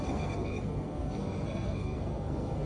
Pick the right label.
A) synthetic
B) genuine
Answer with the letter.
A